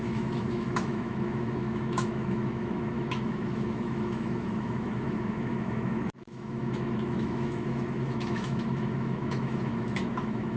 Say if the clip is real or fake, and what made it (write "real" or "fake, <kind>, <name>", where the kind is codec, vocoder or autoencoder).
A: fake, autoencoder, DAC-VAE